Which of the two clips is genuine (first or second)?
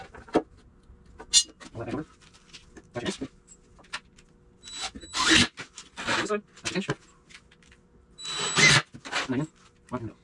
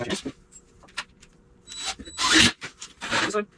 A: first